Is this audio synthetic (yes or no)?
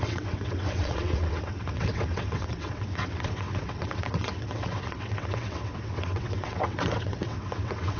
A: yes